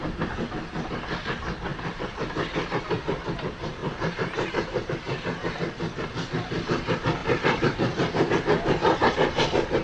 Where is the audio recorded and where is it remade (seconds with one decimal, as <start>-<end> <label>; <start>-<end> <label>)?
0.0-3.8 recorded; 3.8-4.9 remade; 4.9-7.2 recorded; 7.2-8.3 remade; 8.3-9.0 recorded; 9.0-9.8 remade